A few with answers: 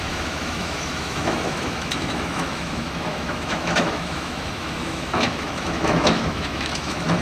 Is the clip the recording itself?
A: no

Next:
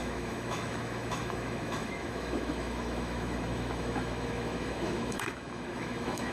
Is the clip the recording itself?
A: no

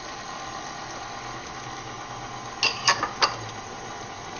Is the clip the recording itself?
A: yes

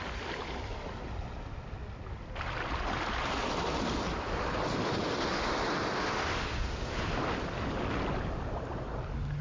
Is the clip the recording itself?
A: yes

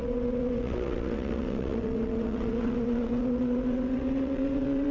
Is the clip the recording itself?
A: no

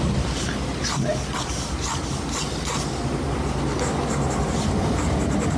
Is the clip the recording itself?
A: yes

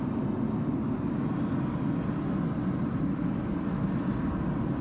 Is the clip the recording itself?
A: yes